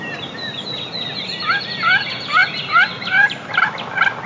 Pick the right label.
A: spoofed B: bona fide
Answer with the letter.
B